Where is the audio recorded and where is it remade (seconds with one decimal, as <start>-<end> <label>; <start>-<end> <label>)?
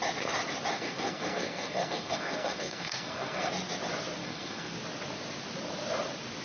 0.0-0.7 recorded; 0.7-3.5 remade; 3.5-4.2 recorded; 4.2-4.7 remade; 4.7-6.4 recorded